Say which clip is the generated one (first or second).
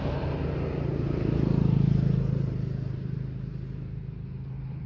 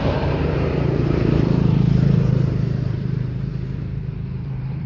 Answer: second